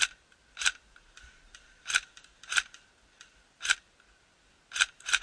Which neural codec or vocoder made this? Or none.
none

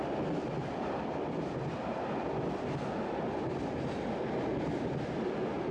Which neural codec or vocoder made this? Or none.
none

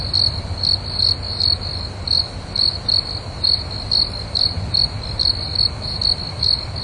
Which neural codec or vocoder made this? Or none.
none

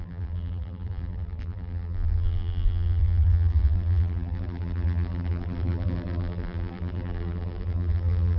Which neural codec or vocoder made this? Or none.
vocoder, BigVGAN v2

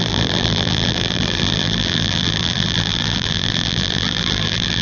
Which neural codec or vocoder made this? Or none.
vocoder, BigVGAN v2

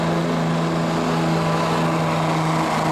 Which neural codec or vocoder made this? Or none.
none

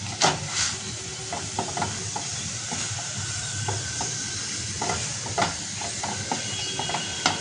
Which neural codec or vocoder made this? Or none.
none